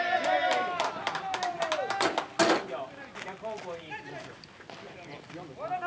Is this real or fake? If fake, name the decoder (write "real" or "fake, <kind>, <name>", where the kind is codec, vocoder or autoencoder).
real